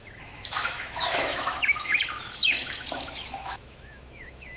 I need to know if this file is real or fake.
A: fake